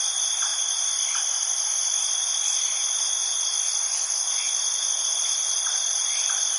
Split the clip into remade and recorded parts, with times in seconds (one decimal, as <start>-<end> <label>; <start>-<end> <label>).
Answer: 0.0-5.1 recorded; 5.1-6.6 remade